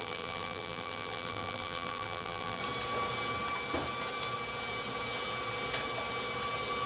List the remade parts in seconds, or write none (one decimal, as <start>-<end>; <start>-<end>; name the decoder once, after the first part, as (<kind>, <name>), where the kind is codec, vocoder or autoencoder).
0.0-2.6 (vocoder, BigVGAN v2)